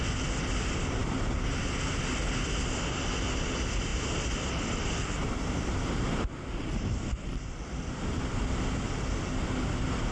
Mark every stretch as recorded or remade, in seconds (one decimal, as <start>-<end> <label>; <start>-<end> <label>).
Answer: 0.0-10.1 recorded